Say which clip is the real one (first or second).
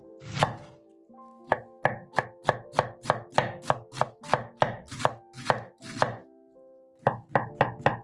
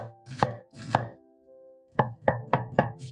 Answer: first